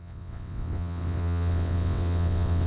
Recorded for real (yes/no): no